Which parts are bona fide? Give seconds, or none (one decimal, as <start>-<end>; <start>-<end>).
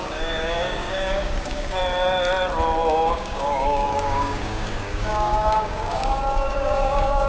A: 1.8-2.9